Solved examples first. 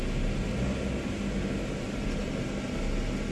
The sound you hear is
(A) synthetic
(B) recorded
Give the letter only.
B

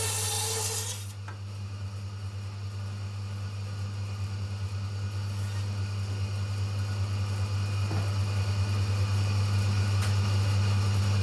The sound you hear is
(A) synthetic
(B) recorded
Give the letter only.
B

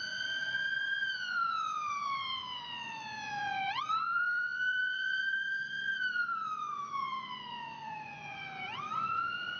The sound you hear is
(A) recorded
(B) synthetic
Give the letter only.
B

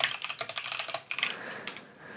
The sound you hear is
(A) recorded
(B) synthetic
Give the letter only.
A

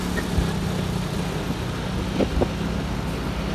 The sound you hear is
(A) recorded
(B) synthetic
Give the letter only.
A